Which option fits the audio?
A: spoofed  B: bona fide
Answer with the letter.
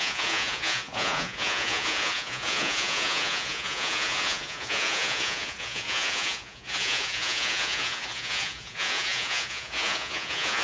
A